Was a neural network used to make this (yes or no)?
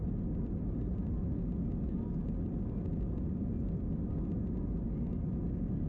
no